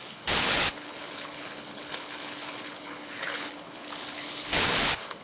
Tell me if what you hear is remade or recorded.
remade